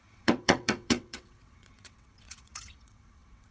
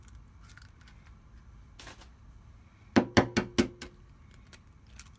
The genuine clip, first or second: second